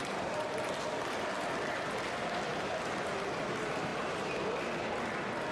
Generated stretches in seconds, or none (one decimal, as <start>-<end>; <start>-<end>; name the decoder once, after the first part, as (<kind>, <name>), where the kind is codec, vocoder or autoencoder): none